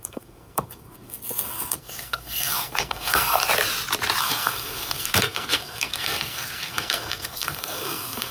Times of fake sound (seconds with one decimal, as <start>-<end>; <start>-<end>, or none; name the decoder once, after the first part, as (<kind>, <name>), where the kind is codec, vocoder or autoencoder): 0.0-3.4 (codec, SNAC); 4.2-8.3